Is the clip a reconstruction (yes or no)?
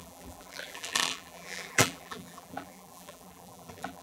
yes